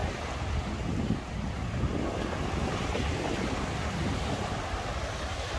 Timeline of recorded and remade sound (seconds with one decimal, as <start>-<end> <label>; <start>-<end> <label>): 0.0-5.6 recorded